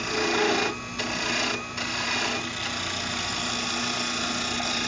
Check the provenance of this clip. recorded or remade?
recorded